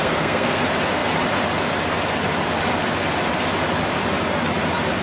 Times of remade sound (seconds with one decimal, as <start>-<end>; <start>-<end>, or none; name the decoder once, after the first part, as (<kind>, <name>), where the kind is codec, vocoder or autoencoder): 0.0-0.6 (codec, SNAC)